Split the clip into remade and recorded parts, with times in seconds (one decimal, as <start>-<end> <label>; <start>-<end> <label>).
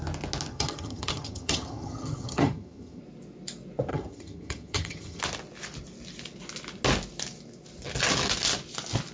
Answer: 0.0-0.5 recorded; 0.5-3.0 remade; 3.0-3.9 recorded; 3.9-5.2 remade; 5.2-9.1 recorded